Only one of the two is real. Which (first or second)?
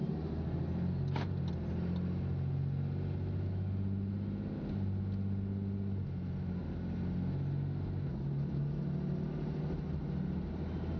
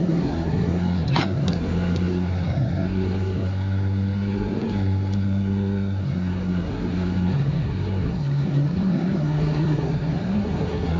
first